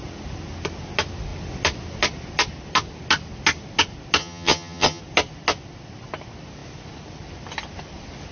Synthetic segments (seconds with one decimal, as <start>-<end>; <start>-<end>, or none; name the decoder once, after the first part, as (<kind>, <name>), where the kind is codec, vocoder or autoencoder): 4.2-5.0 (vocoder, HiFi-GAN)